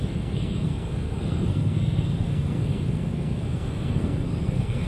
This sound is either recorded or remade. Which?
remade